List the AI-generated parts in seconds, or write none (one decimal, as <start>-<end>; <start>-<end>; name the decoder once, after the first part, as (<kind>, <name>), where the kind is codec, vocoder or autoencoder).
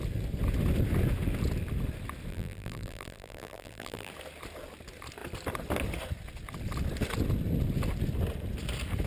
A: 2.3-4.1 (vocoder, BigVGAN v2)